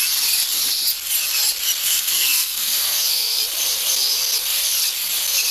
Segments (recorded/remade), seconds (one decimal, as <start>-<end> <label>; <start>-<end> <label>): 0.0-1.8 recorded; 1.8-3.4 remade; 3.4-5.5 recorded